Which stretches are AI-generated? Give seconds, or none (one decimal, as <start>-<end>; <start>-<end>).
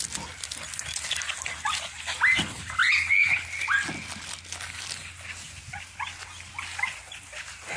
none